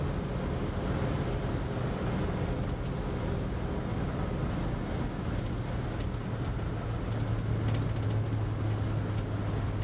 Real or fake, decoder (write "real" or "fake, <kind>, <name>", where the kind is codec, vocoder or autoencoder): real